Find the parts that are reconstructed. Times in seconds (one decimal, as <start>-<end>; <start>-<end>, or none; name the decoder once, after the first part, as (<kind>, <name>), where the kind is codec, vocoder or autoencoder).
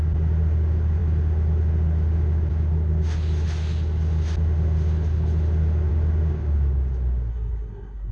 7.3-8.1 (codec, SNAC)